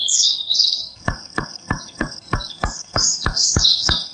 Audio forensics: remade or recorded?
remade